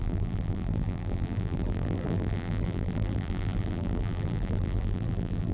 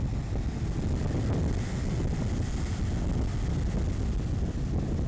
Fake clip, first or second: first